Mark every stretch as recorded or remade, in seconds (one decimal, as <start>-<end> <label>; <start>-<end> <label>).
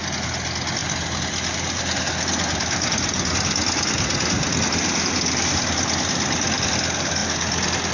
0.0-7.9 recorded